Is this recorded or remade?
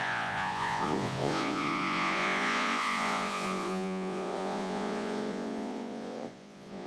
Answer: remade